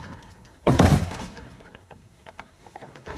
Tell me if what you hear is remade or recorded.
remade